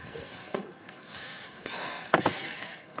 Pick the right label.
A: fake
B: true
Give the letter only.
A